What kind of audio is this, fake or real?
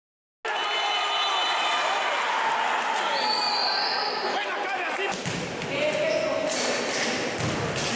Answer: real